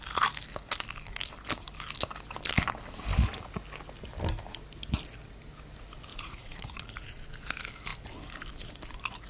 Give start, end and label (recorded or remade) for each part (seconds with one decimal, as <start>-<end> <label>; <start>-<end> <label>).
0.0-6.1 recorded; 6.1-7.3 remade; 7.3-9.3 recorded